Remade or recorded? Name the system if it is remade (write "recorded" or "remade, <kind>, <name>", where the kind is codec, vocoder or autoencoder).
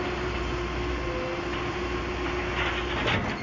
recorded